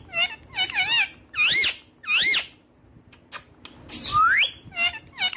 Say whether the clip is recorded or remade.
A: recorded